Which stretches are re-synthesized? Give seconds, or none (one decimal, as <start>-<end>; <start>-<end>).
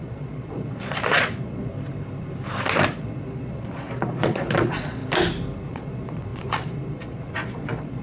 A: 0.0-1.7; 2.9-5.0; 5.7-8.0